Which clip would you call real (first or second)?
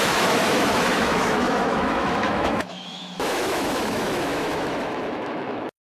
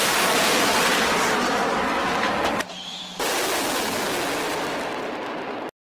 second